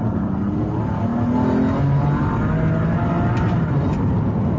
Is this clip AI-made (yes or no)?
no